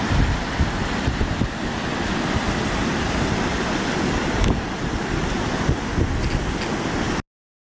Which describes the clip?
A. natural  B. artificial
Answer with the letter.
A